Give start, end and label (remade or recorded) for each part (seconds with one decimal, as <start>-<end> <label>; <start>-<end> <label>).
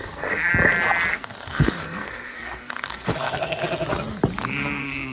0.0-0.5 remade; 0.5-1.1 recorded; 1.1-3.6 remade; 3.6-4.5 recorded; 4.5-5.1 remade